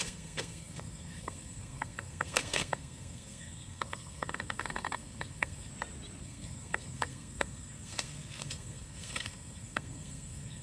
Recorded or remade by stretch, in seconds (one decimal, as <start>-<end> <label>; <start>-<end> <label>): 0.0-5.7 remade; 5.7-6.2 recorded; 6.2-10.6 remade